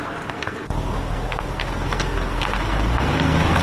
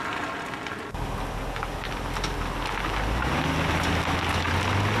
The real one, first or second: second